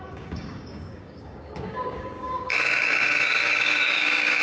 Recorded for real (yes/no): no